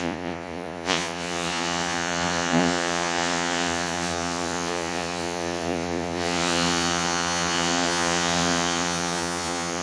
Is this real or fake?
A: fake